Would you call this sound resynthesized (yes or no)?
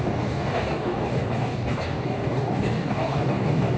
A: yes